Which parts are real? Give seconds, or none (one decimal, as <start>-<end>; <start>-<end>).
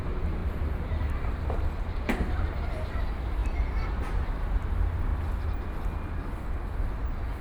5.1-7.4